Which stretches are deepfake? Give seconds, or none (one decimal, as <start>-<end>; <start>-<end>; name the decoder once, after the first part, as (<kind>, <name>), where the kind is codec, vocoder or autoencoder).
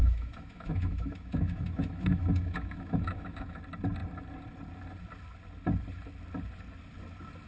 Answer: 0.0-3.6 (autoencoder, DAC-VAE)